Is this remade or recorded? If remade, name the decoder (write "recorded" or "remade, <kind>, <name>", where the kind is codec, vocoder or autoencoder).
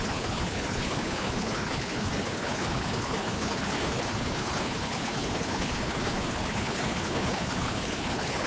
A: remade, codec, HILCodec